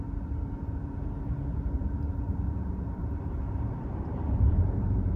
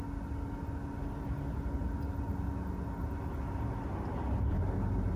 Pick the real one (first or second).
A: second